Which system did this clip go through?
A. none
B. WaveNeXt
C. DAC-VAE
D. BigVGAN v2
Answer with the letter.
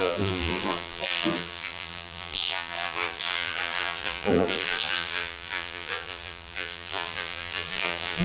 D